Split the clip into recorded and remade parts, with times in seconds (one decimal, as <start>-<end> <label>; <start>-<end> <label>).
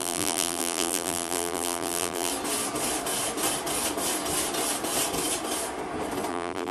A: 0.0-2.3 remade; 2.3-6.3 recorded; 6.3-6.7 remade